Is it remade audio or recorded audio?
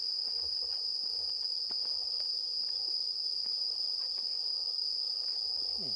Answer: recorded